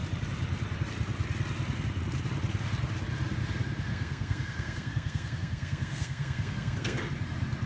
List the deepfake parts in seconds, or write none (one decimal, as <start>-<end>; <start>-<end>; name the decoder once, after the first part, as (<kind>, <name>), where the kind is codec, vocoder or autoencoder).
3.9-7.1 (codec, SNAC)